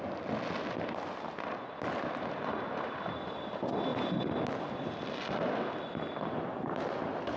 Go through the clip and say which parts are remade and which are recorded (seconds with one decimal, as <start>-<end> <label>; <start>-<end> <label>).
0.0-7.4 recorded